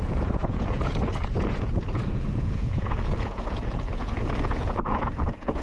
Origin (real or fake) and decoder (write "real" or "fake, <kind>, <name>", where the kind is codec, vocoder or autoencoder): fake, vocoder, Vocos